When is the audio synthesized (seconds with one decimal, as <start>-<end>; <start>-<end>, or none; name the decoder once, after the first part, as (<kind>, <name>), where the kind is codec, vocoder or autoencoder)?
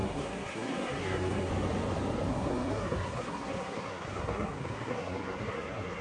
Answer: 0.0-1.5 (codec, SNAC); 2.3-6.0